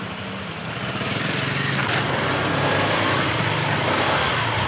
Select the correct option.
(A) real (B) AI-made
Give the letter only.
A